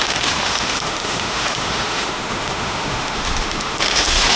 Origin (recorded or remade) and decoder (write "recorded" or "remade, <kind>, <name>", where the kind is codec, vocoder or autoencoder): remade, autoencoder, DAC-VAE